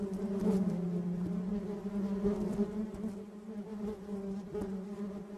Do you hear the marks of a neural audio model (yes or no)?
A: no